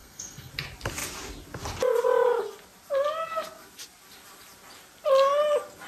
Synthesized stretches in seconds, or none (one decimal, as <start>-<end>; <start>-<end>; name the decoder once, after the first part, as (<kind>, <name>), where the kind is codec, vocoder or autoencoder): 0.0-0.5 (codec, SNAC)